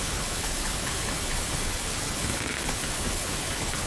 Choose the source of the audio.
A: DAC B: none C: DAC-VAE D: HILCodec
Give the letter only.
D